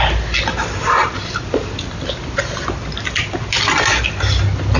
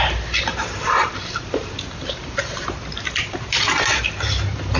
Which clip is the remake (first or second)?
second